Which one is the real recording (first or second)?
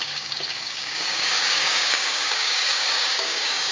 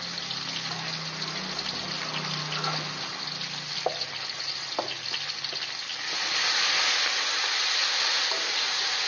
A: second